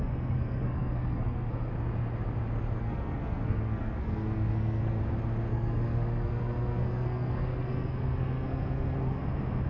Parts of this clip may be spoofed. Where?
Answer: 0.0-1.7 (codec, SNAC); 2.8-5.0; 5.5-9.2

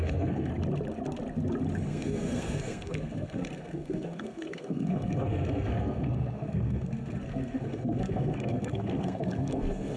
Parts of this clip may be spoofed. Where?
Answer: 0.0-0.5 (codec, SNAC); 1.9-10.0

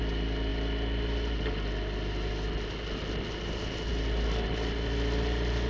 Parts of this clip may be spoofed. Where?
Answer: none

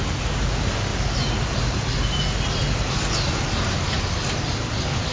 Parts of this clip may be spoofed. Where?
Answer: none

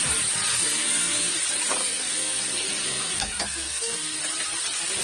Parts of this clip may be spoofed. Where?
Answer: 0.5-1.3 (codec, SNAC); 1.8-2.4; 2.8-4.2

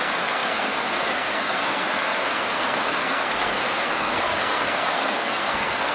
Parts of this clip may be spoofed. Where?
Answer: 0.0-5.9 (codec, SNAC)

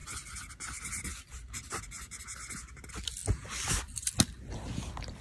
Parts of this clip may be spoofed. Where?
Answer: none